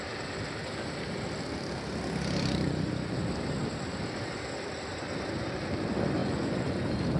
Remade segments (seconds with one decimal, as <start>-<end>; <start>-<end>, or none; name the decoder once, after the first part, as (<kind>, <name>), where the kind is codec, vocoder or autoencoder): 6.2-6.8 (vocoder, Vocos)